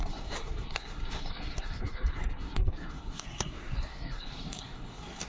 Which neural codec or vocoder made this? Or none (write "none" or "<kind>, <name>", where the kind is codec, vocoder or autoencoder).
codec, SNAC